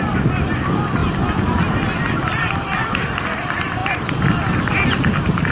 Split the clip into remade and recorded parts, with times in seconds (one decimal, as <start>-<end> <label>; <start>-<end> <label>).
0.0-5.5 recorded